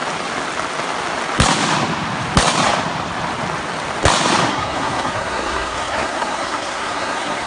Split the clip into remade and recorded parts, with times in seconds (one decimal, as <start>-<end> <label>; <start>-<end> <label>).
0.0-4.5 recorded; 4.5-7.5 remade